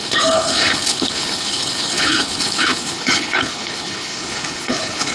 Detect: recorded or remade remade